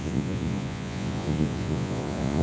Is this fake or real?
fake